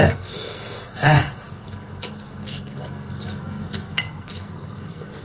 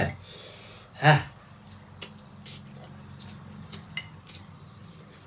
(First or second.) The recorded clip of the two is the second